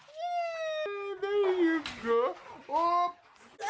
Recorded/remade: recorded